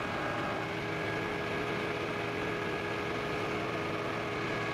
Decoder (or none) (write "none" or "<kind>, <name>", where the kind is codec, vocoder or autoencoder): none